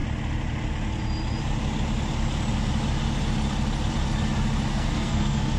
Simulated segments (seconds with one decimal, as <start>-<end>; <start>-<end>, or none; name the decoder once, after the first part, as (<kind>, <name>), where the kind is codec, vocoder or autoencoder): 4.7-5.6 (codec, SNAC)